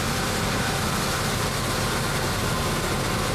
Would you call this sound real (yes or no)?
yes